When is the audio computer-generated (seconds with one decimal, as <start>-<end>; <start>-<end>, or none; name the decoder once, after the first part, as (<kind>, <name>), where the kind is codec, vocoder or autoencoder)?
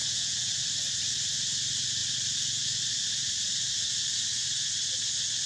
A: 0.0-0.6 (vocoder, Vocos)